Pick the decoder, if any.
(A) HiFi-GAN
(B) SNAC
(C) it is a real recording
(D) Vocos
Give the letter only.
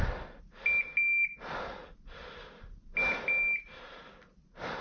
C